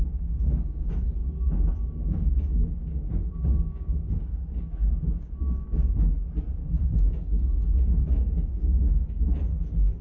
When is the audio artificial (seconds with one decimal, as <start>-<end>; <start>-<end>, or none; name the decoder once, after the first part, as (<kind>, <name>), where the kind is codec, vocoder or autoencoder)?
1.2-5.3 (codec, DAC); 6.8-9.4